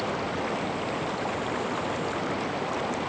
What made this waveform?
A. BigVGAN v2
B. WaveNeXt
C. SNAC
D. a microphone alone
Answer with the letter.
D